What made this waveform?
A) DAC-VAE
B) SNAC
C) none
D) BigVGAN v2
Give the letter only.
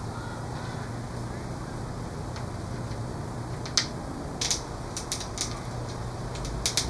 C